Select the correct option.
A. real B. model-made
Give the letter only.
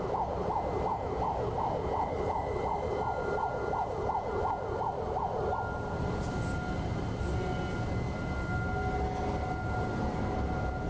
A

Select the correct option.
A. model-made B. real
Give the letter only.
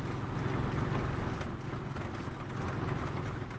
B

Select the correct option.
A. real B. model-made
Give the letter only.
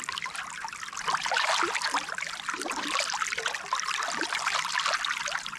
A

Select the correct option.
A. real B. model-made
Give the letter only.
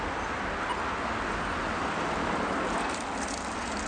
A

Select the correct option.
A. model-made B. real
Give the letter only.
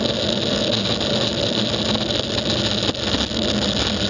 B